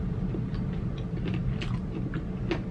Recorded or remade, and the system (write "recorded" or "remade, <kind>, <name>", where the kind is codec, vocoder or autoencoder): recorded